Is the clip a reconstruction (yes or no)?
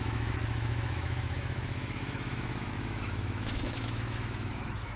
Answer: yes